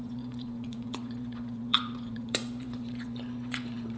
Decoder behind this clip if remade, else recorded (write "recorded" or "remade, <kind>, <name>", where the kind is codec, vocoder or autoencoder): remade, vocoder, Vocos